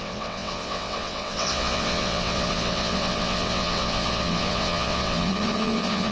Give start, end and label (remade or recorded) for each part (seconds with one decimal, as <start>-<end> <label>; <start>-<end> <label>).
0.0-6.1 remade